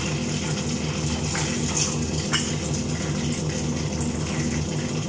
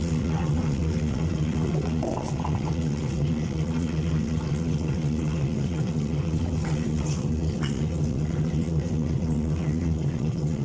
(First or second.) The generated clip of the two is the second